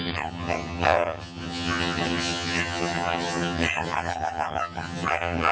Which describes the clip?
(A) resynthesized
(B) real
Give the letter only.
A